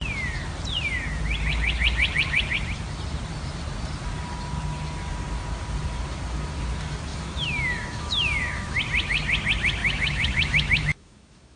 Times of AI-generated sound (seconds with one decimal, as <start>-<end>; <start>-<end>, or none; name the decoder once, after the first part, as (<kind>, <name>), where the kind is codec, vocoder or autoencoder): 7.1-8.8 (autoencoder, DAC-VAE); 9.8-11.6